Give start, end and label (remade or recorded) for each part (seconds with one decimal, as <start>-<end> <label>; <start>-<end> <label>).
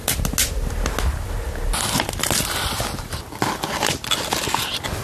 0.0-5.0 recorded